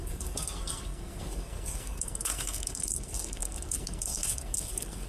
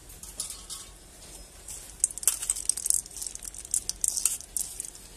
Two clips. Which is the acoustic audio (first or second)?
second